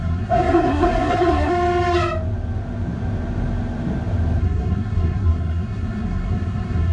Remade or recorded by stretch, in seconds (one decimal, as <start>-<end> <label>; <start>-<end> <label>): 0.0-1.5 remade; 1.5-4.4 recorded; 4.4-6.9 remade

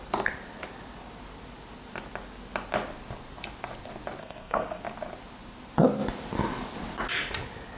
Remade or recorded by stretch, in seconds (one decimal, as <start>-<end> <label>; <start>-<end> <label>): 0.0-4.2 recorded; 4.2-4.8 remade; 4.8-7.8 recorded

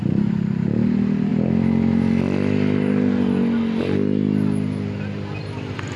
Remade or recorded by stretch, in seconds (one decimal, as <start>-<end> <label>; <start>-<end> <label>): 0.0-6.0 recorded